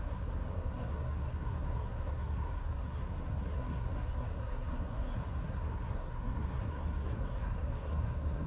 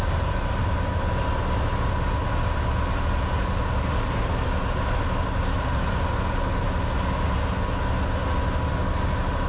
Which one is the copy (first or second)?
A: first